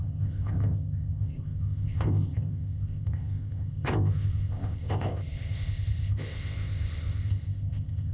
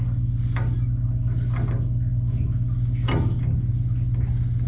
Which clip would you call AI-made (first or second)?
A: first